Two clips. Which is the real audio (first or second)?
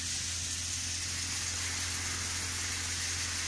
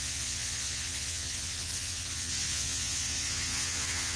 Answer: first